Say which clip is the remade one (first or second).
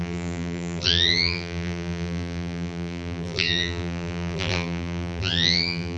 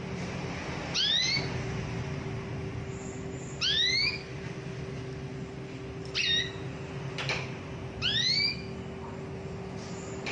first